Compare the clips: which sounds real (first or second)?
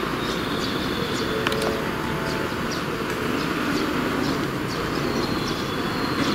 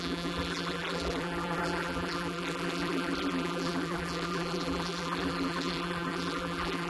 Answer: first